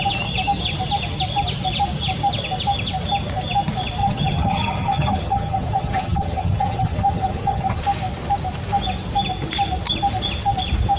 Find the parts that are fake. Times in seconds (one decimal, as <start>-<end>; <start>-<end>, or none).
4.0-7.8